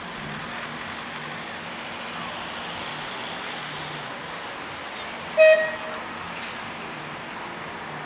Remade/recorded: recorded